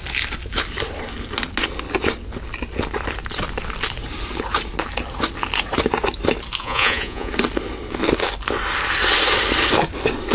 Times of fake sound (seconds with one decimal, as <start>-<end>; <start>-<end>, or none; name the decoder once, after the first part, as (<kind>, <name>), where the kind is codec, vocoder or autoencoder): 6.6-7.3 (vocoder, Vocos)